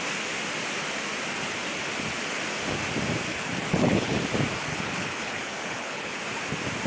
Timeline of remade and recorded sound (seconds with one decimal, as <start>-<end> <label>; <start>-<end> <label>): 0.0-3.3 recorded; 3.3-4.2 remade; 4.2-4.7 recorded; 4.7-6.2 remade; 6.2-6.9 recorded